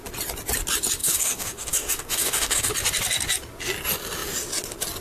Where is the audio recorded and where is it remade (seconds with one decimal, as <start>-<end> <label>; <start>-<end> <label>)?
0.0-1.0 recorded; 1.0-2.7 remade; 2.7-5.0 recorded